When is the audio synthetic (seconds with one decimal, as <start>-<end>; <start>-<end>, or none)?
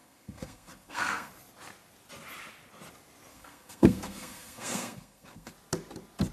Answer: 0.0-1.3; 3.3-5.5